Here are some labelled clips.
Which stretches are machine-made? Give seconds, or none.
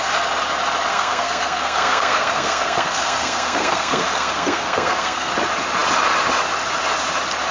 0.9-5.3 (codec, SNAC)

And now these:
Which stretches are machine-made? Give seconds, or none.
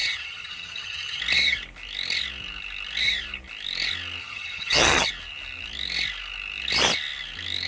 0.0-1.2 (vocoder, HiFi-GAN); 4.2-5.1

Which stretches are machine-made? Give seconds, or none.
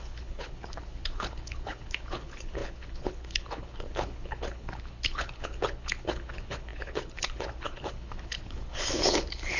0.0-9.6 (codec, HILCodec)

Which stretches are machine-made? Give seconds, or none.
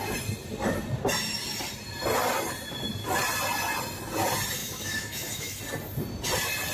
4.6-5.6 (autoencoder, DAC-VAE)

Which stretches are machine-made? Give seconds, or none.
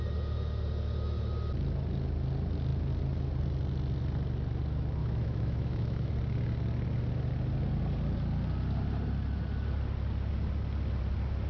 5.0-6.1 (autoencoder, DAC-VAE)